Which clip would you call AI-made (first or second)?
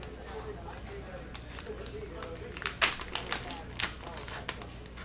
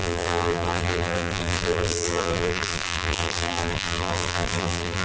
second